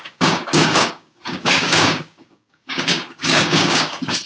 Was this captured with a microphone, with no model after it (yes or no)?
no